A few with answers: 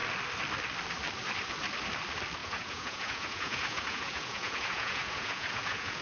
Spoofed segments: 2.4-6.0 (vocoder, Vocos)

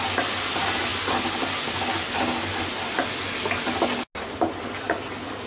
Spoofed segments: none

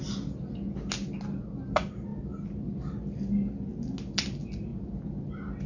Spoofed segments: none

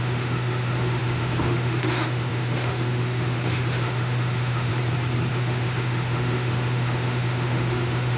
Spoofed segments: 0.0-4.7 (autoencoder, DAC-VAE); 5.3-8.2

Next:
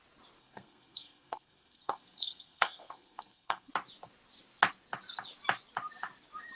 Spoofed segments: 0.4-3.7 (codec, SNAC)

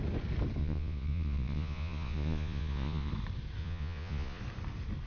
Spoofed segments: 0.6-3.1 (vocoder, Vocos); 3.6-4.4

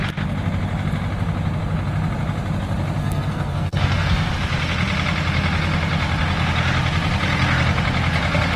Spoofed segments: 3.0-4.3 (codec, SNAC)